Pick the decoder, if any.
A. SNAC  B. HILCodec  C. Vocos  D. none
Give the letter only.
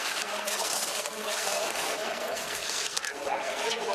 A